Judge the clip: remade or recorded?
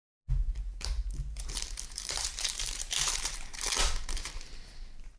remade